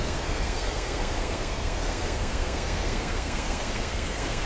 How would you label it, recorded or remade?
remade